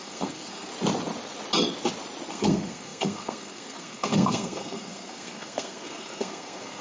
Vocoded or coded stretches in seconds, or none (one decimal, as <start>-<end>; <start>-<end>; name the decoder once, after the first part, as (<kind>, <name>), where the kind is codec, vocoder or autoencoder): 0.0-0.7 (codec, SNAC); 2.3-6.8